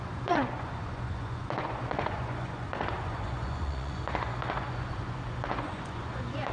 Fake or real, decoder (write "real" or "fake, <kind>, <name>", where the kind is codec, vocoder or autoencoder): fake, vocoder, Vocos